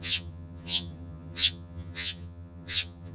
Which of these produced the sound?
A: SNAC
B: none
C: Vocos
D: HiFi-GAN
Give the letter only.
D